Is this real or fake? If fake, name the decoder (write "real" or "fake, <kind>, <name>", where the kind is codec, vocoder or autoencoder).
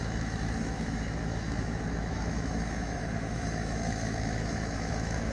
fake, autoencoder, DAC-VAE